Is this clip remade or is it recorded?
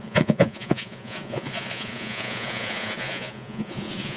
remade